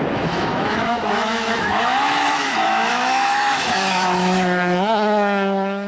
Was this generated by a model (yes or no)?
yes